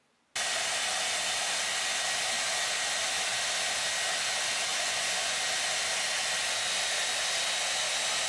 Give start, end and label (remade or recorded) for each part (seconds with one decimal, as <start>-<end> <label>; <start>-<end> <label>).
0.0-4.7 recorded; 4.7-5.4 remade; 5.4-8.3 recorded